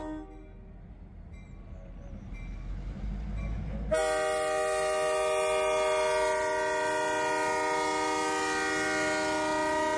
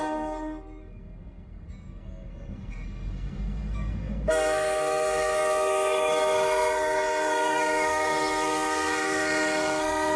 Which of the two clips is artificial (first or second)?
second